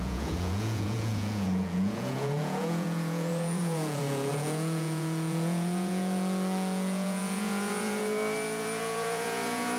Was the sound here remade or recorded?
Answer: remade